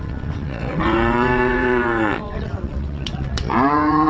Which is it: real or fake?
fake